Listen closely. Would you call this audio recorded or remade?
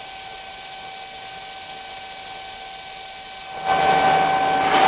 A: recorded